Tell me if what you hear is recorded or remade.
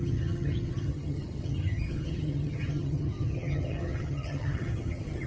remade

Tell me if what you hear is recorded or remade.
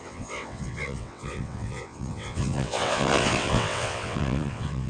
remade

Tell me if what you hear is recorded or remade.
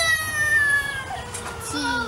recorded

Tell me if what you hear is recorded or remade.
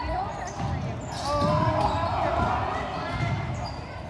recorded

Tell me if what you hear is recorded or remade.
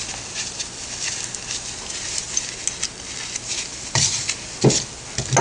recorded